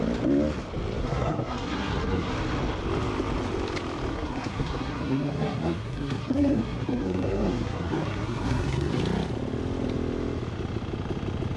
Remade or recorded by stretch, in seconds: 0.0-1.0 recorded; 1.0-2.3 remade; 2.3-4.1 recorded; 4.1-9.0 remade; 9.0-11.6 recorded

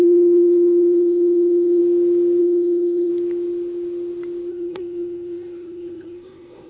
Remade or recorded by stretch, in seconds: 0.0-1.8 remade; 1.8-2.4 recorded; 2.4-3.1 remade; 3.1-4.5 recorded; 4.5-6.7 remade

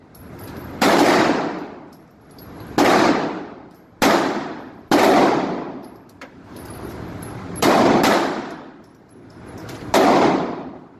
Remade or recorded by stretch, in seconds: 0.0-5.8 recorded; 5.8-7.9 remade; 7.9-11.0 recorded

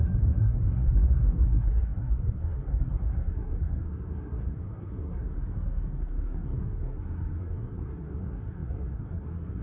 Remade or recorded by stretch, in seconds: 0.0-9.6 remade

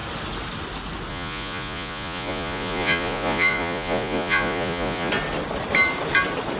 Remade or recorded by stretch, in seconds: 0.0-1.1 recorded; 1.1-5.1 remade; 5.1-6.6 recorded

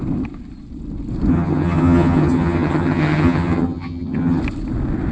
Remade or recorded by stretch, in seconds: 0.0-1.3 recorded; 1.3-4.4 remade; 4.4-5.1 recorded

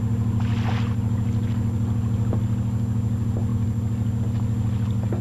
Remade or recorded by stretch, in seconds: 0.0-5.2 recorded

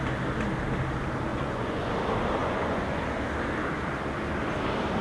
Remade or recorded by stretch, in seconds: 0.0-1.3 recorded; 1.3-1.9 remade; 1.9-2.4 recorded; 2.4-3.0 remade; 3.0-5.0 recorded